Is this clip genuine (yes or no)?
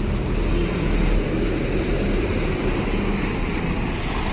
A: yes